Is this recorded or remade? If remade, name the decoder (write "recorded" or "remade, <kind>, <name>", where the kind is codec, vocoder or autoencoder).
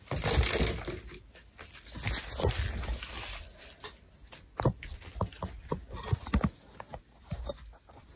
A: recorded